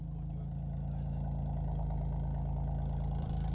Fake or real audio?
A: fake